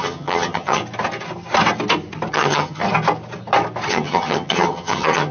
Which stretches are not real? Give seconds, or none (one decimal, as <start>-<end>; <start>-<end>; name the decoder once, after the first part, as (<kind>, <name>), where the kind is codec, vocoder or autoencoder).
0.0-0.8 (vocoder, HiFi-GAN); 2.3-2.8; 3.9-5.3